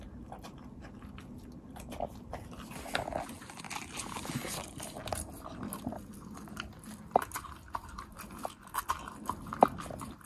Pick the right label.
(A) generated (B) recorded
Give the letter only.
B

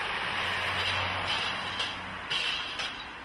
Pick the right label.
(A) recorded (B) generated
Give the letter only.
A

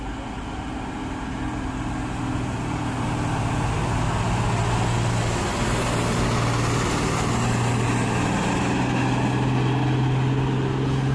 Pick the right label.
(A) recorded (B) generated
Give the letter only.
A